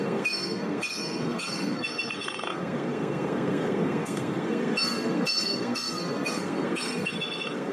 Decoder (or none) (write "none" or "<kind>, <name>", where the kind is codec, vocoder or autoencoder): codec, SNAC